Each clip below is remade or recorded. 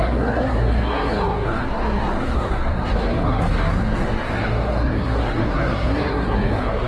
remade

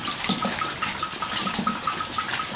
recorded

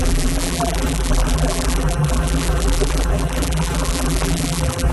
remade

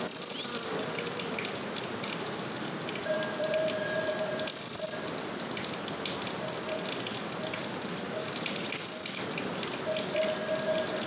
recorded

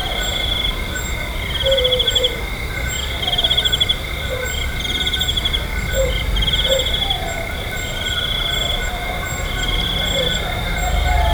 remade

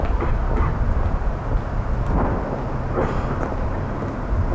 recorded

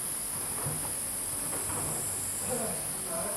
recorded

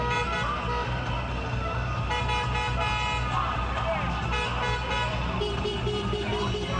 recorded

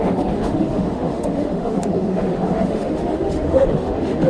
remade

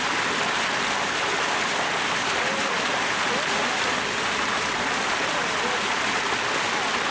recorded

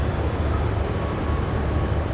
recorded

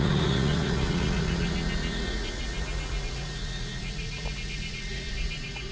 remade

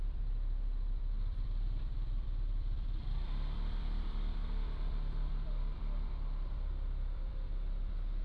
remade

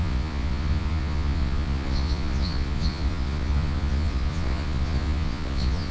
remade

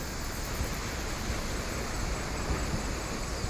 recorded